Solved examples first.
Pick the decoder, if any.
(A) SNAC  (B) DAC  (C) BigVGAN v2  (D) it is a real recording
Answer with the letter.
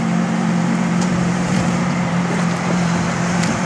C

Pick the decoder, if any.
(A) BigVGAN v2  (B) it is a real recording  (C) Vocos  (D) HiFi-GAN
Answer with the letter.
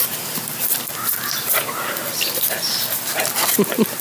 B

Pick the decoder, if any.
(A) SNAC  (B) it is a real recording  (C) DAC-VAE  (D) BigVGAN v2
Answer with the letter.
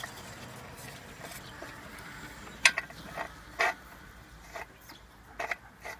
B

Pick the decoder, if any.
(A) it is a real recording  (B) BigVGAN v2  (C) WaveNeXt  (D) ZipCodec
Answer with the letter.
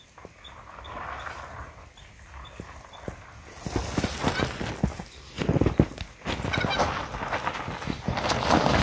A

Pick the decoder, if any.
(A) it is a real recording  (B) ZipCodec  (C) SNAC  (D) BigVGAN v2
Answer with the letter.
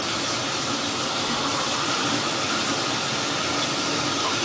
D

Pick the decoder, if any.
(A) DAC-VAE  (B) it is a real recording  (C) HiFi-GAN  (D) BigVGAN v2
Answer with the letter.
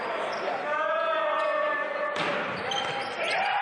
D